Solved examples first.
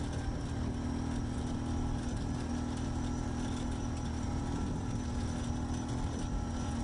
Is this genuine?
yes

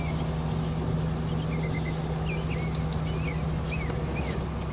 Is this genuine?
yes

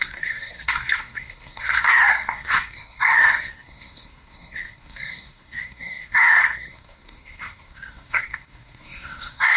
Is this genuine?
no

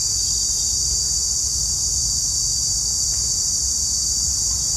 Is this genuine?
yes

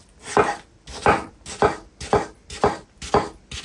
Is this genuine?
yes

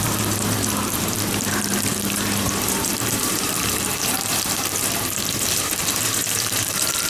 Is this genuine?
no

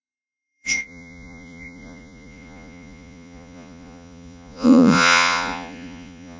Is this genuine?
no